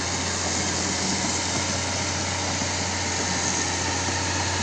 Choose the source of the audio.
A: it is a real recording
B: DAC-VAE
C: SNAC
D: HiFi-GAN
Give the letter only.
A